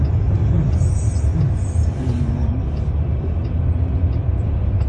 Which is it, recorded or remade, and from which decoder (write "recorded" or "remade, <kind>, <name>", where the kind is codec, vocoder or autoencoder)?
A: recorded